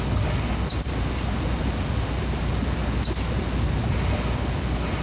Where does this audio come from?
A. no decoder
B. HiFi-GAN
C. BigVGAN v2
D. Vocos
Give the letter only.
A